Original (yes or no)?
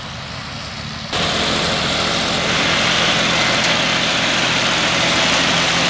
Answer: yes